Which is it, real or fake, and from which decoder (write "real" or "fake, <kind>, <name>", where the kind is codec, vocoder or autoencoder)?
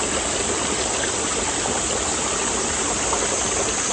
real